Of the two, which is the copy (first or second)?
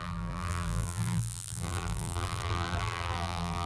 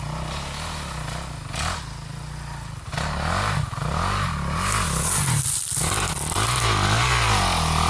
first